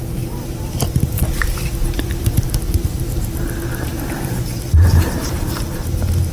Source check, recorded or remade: remade